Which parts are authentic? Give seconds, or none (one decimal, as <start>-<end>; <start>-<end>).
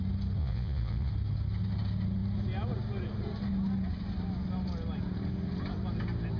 0.0-0.4; 1.1-6.4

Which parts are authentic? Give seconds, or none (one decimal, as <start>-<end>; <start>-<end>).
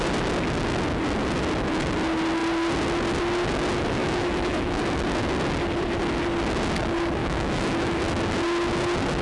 0.0-4.0; 4.8-7.2; 8.0-9.2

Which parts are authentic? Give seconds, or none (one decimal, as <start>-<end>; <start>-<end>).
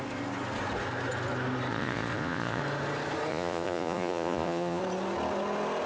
0.0-1.7; 2.6-3.3; 4.8-5.9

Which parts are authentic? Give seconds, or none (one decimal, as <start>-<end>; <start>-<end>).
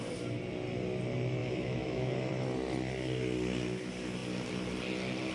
0.0-1.4; 2.3-5.3